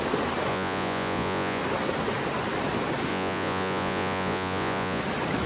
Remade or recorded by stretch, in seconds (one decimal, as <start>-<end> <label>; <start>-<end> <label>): 0.0-0.5 recorded; 0.5-1.6 remade; 1.6-3.1 recorded; 3.1-5.0 remade; 5.0-5.5 recorded